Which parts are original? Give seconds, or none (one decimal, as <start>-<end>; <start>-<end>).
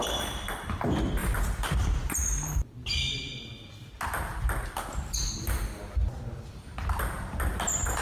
0.0-1.2; 2.2-2.9; 3.5-8.0